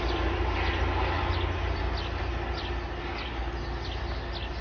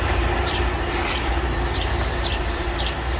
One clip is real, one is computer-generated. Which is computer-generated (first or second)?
second